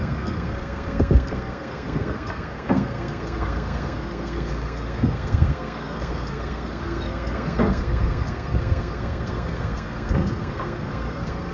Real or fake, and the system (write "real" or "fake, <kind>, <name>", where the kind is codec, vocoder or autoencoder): fake, codec, SNAC